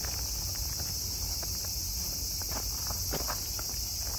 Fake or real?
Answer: real